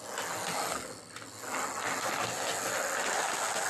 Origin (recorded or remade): recorded